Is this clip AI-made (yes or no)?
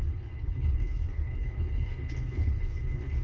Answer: yes